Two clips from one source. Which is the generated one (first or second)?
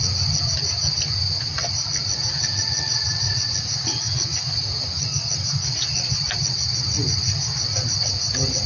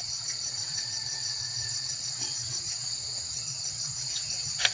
second